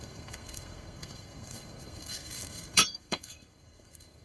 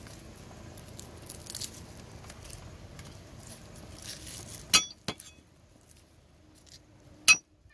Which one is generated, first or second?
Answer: first